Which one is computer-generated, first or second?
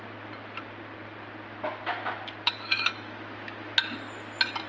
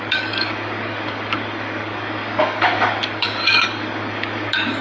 second